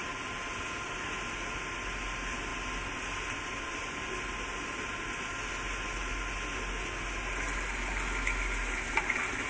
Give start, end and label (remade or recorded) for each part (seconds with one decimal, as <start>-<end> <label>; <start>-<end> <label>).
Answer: 0.0-9.5 recorded